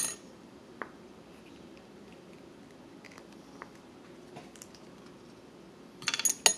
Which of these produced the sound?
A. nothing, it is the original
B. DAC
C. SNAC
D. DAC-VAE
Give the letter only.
A